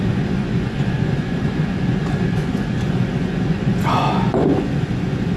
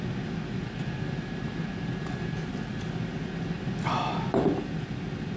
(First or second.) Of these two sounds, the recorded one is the second